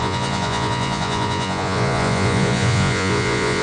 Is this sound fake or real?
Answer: fake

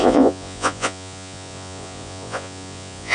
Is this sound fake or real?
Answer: fake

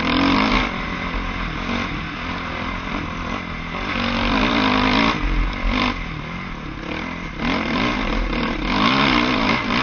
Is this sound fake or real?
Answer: real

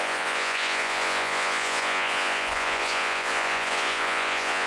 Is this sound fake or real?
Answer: fake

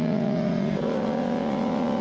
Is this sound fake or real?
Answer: fake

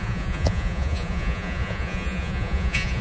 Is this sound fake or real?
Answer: fake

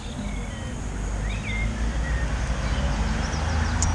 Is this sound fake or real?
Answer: real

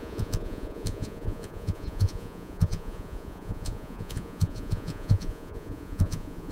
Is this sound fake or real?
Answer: fake